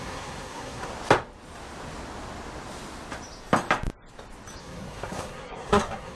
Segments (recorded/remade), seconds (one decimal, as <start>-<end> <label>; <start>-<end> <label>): 0.0-0.9 remade; 0.9-4.6 recorded; 4.6-6.2 remade